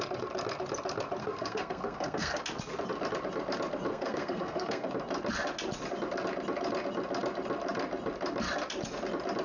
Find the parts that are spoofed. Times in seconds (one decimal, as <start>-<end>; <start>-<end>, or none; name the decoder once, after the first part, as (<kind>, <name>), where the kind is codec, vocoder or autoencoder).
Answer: 1.2-2.4 (codec, SNAC); 3.9-4.9